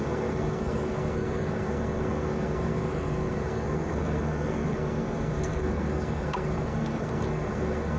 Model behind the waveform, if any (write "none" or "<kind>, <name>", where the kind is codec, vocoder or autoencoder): codec, SNAC